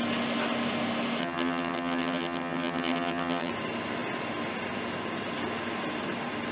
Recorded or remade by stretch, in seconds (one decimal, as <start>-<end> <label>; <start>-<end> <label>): 0.0-1.2 recorded; 1.2-3.5 remade; 3.5-6.5 recorded